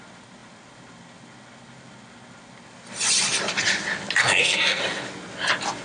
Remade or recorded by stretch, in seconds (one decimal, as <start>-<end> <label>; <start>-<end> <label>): 0.0-4.2 recorded; 4.2-4.8 remade; 4.8-5.8 recorded

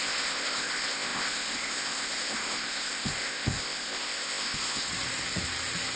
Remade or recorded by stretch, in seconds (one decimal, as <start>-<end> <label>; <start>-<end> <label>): 0.0-4.9 remade; 4.9-6.0 recorded

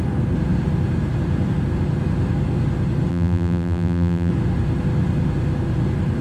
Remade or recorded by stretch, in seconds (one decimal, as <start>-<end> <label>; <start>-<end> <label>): 0.0-3.1 recorded; 3.1-4.3 remade; 4.3-6.2 recorded